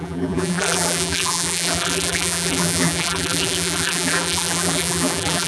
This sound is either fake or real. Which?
fake